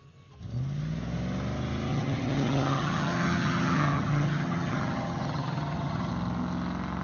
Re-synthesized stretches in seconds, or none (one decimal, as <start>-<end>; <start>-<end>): 1.9-6.1